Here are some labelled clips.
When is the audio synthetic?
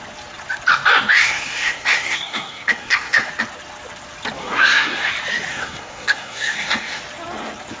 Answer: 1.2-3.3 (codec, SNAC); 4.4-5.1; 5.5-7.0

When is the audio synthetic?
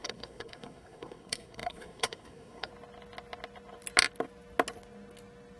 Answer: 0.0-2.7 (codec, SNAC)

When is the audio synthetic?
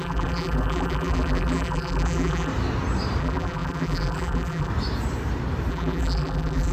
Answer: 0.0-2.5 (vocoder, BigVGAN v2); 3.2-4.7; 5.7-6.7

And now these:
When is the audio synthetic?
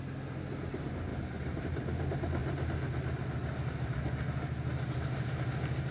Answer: 1.1-1.6 (vocoder, BigVGAN v2)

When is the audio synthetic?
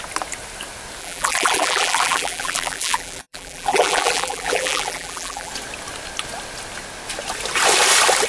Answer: 1.0-5.5 (vocoder, BigVGAN v2)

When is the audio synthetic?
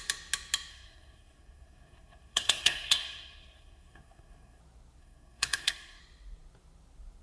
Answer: 0.7-4.6 (codec, SNAC); 5.0-6.0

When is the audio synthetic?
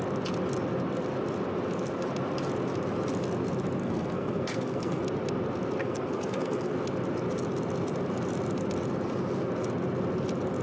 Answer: 3.8-5.0 (codec, SNAC); 5.8-6.7